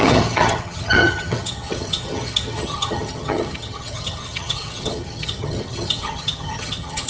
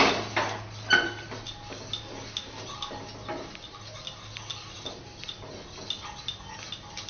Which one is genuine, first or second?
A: second